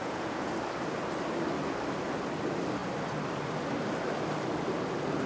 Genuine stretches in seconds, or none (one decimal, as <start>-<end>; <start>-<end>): 0.5-5.3